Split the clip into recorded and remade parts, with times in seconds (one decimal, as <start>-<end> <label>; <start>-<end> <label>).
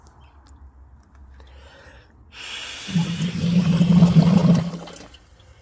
0.0-5.6 recorded